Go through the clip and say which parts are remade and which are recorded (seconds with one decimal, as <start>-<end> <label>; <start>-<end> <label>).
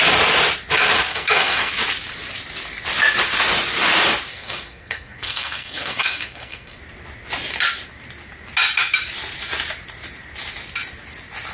0.0-1.1 recorded; 1.1-1.7 remade; 1.7-4.3 recorded; 4.3-6.8 remade; 6.8-11.5 recorded